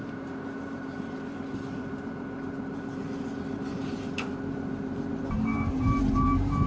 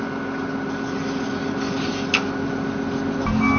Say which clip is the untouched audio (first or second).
second